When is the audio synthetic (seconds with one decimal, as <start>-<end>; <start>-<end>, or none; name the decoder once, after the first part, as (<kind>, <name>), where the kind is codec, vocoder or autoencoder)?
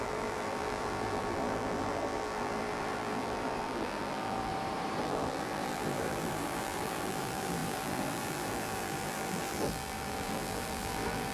0.0-4.5 (vocoder, BigVGAN v2); 5.0-11.3